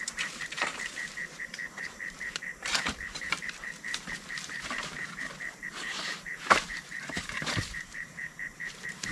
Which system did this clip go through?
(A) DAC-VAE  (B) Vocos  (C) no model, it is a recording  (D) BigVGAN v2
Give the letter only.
D